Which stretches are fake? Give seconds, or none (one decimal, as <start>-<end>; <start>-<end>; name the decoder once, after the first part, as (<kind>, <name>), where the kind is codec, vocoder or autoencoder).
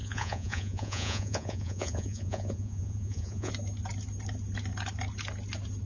0.0-3.5 (vocoder, Vocos)